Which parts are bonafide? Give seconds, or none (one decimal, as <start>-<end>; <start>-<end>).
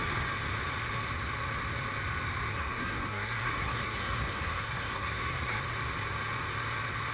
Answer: 0.0-2.5; 5.6-7.1